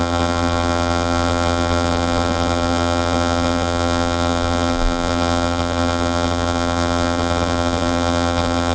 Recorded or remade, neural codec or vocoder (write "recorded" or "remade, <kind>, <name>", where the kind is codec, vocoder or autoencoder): remade, vocoder, BigVGAN v2